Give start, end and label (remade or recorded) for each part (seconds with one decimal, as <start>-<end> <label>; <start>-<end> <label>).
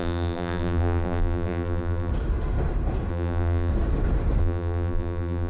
0.0-2.1 remade; 2.1-3.1 recorded; 3.1-3.7 remade; 3.7-4.4 recorded; 4.4-5.5 remade